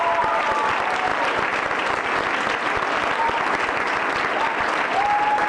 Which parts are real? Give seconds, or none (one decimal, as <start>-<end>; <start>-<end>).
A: 0.0-5.5